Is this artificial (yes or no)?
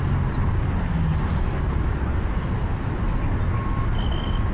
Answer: no